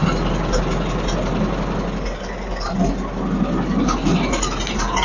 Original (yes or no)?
yes